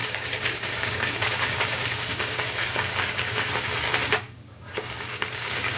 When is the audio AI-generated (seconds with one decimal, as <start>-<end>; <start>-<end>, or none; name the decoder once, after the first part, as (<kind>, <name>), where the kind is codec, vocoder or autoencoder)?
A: 0.0-3.5 (codec, DAC); 4.0-5.8